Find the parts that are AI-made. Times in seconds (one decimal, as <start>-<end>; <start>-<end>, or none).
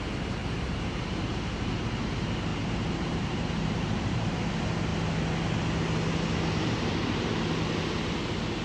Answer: 0.4-1.7; 2.5-4.5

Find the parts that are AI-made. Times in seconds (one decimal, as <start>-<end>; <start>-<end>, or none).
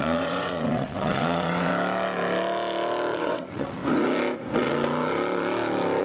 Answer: 0.0-1.7; 3.2-3.8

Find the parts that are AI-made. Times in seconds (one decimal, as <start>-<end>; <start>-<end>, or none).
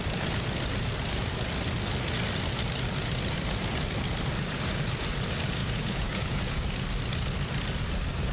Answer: 5.6-6.6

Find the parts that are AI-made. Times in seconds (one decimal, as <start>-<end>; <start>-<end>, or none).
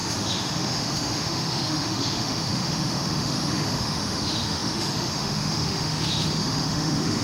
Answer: 0.0-7.2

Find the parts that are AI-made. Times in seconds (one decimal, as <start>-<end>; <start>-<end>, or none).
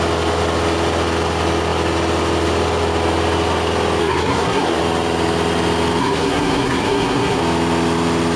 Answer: 4.0-4.8; 6.0-7.4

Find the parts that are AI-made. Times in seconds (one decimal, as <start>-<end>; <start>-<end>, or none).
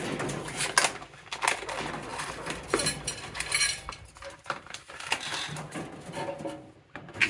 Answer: 2.1-5.5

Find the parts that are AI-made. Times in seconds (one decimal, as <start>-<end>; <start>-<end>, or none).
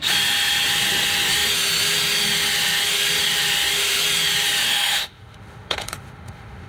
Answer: 4.6-6.7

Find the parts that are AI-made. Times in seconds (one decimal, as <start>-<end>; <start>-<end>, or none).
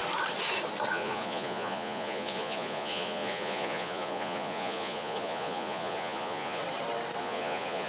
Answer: 0.9-6.6; 7.2-7.9